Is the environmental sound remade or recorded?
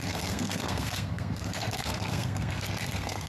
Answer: remade